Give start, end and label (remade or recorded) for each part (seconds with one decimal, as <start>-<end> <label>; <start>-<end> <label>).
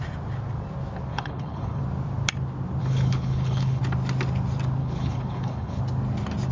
0.0-1.1 recorded; 1.1-1.8 remade; 1.8-2.8 recorded; 2.8-3.8 remade; 3.8-4.8 recorded; 4.8-5.8 remade; 5.8-6.5 recorded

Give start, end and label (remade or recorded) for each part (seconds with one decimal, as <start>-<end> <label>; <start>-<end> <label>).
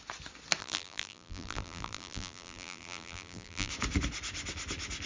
0.0-0.6 recorded; 0.6-3.7 remade; 3.7-5.1 recorded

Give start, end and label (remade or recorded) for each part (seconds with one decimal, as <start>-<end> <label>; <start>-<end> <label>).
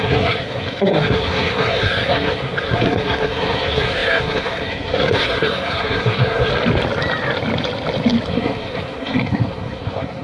0.0-6.5 remade; 6.5-8.3 recorded; 8.3-10.2 remade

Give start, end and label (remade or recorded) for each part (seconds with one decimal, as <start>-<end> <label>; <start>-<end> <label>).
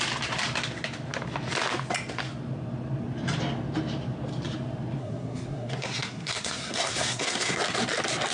0.0-5.0 recorded; 5.0-7.6 remade; 7.6-8.3 recorded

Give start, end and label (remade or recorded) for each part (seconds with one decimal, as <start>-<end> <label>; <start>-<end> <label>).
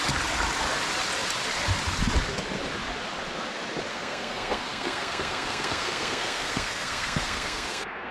0.0-3.9 recorded; 3.9-8.1 remade